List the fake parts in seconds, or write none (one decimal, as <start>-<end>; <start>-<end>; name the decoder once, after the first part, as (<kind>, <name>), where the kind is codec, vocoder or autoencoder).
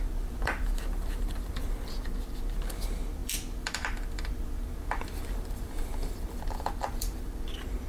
0.0-7.9 (vocoder, BigVGAN v2)